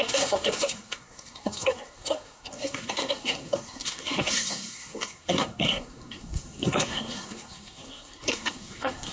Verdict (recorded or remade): remade